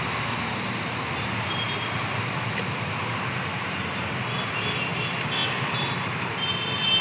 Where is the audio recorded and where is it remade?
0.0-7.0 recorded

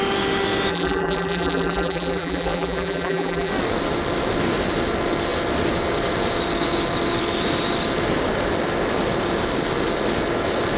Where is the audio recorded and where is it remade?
0.0-0.7 recorded; 0.7-3.5 remade; 3.5-10.8 recorded

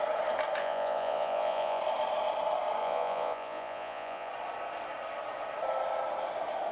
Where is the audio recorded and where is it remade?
0.0-0.6 recorded; 0.6-1.8 remade; 1.8-2.8 recorded; 2.8-4.3 remade; 4.3-6.7 recorded

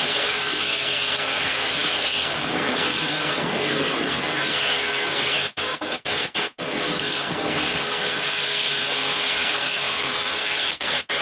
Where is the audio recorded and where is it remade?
0.0-11.2 remade

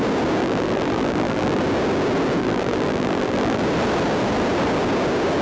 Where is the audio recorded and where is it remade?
0.0-0.4 recorded; 0.4-1.6 remade; 1.6-2.4 recorded; 2.4-3.6 remade; 3.6-5.4 recorded

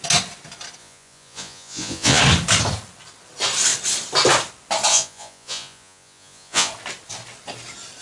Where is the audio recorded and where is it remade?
0.0-0.8 recorded; 0.8-2.2 remade; 2.2-4.9 recorded; 4.9-6.7 remade; 6.7-8.0 recorded

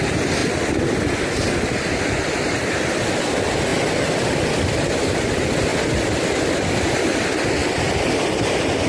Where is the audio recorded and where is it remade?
0.0-3.7 recorded; 3.7-5.2 remade; 5.2-7.6 recorded; 7.6-8.9 remade